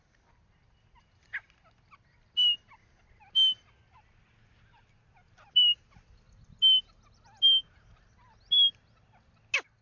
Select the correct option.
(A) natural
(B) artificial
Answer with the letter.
A